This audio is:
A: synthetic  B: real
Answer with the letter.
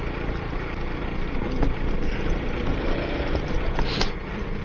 A